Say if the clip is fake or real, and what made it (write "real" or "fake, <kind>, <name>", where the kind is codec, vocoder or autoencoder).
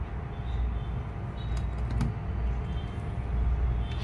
real